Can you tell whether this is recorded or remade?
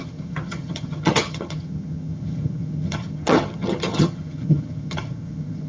remade